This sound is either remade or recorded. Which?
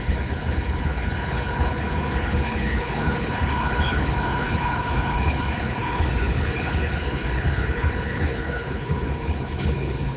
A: remade